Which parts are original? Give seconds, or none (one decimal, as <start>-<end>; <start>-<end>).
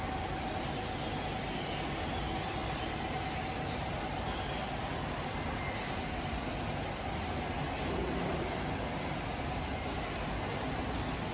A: 0.0-11.3